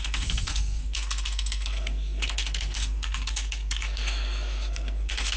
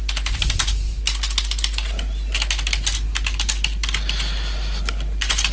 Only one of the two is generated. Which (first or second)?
first